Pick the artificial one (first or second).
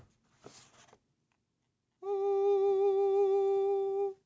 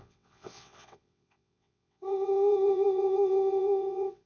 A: second